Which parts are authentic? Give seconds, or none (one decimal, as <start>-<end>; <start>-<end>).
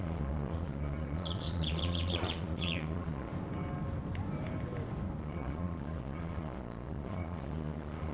3.3-5.2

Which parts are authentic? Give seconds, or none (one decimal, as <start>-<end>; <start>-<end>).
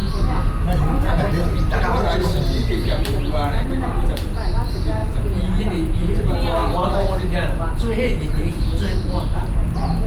0.0-5.0; 5.6-10.1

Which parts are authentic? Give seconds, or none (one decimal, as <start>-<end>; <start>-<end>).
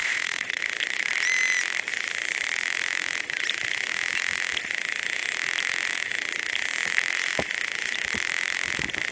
0.6-9.1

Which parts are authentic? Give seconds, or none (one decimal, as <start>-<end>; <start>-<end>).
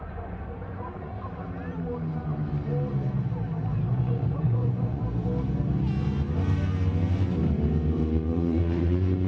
1.1-3.9; 5.0-8.0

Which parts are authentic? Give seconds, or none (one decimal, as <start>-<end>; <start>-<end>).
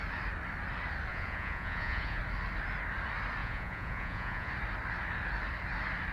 0.0-1.1; 2.2-3.4; 4.5-6.1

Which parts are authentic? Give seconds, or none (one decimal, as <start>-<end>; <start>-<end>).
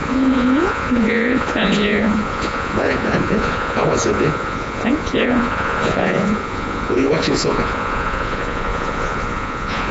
none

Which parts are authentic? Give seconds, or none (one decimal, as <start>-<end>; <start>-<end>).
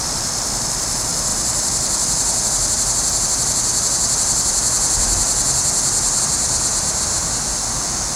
0.0-8.2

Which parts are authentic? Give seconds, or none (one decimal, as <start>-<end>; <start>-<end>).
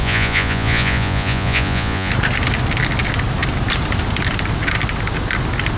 2.1-5.8